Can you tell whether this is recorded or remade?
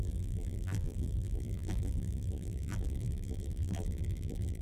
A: remade